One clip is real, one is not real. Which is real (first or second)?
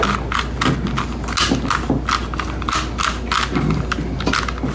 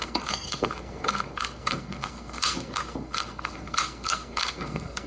first